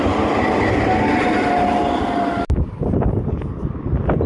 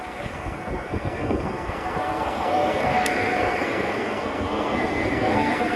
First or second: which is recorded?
first